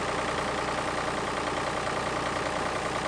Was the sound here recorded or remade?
recorded